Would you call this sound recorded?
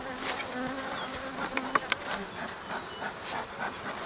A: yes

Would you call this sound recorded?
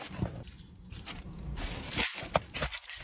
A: no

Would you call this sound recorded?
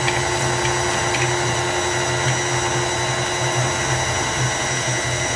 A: yes